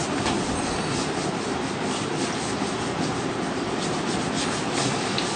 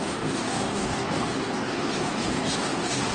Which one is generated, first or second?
second